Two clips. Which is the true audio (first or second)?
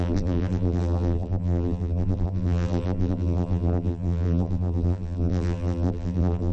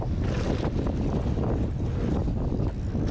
second